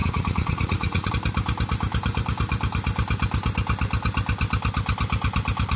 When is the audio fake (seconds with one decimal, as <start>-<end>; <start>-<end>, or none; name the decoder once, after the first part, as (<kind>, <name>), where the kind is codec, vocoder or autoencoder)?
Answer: 0.0-1.1 (vocoder, Vocos)